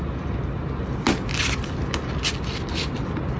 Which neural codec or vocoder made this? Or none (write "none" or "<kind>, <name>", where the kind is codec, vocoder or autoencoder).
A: none